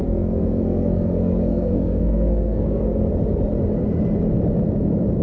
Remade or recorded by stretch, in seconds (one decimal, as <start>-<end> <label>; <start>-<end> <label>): 0.0-3.1 remade; 3.1-5.2 recorded